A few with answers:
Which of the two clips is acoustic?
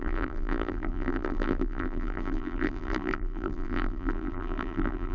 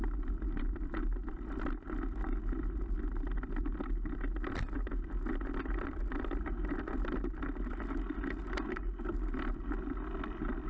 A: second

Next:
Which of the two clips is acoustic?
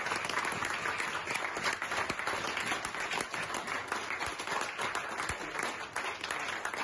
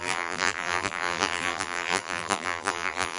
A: first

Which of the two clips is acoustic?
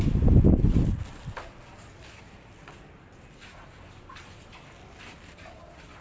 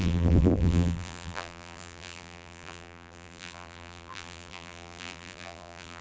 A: first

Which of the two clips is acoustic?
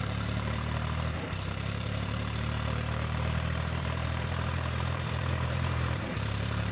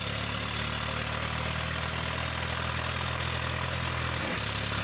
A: second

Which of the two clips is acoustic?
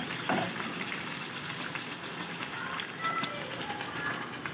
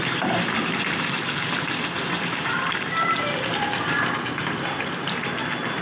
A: first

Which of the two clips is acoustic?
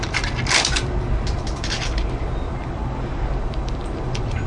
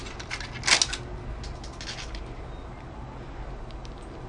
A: second